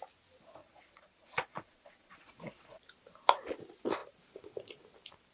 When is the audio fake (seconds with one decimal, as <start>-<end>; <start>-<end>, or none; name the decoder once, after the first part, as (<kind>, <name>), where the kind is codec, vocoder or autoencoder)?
0.6-2.8 (vocoder, Vocos)